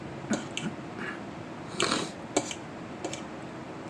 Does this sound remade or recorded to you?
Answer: recorded